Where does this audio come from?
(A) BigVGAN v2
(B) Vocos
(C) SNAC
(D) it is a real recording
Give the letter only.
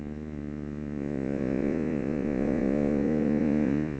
B